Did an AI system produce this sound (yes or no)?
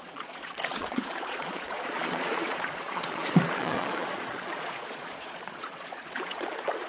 yes